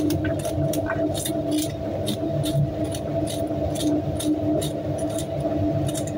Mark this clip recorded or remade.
recorded